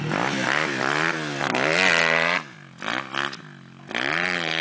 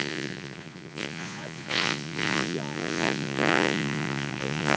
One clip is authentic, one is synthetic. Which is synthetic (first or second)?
second